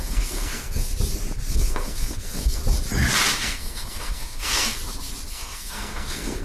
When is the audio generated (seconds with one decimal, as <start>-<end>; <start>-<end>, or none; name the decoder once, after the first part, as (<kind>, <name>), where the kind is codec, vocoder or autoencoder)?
0.0-0.9 (codec, SNAC); 1.5-2.6; 3.4-4.8; 5.3-6.4